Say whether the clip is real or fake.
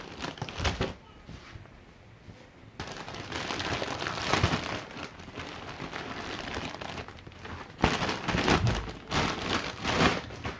real